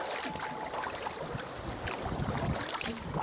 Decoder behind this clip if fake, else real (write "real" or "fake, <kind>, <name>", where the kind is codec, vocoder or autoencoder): real